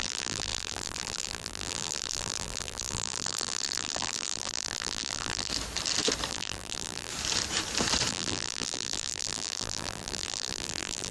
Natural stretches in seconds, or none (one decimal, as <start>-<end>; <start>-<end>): 5.5-6.3; 7.1-8.1